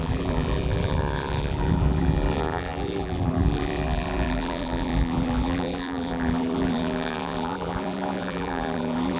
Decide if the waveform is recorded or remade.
remade